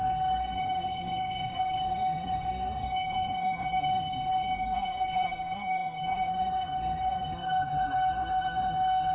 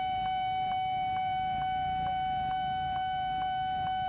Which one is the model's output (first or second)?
first